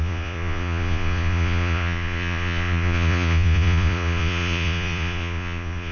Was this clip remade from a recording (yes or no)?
yes